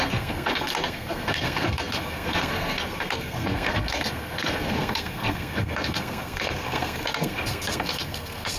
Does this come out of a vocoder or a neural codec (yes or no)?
yes